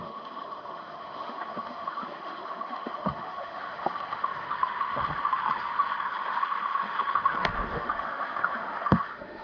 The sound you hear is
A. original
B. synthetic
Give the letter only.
B